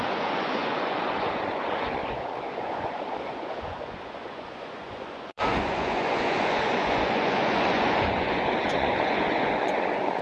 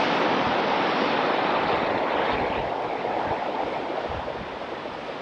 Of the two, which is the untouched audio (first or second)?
second